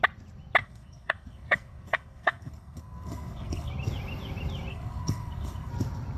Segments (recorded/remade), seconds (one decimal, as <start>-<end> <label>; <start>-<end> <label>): 0.0-0.6 recorded; 0.6-3.7 remade; 3.7-4.7 recorded; 4.7-5.7 remade; 5.7-6.2 recorded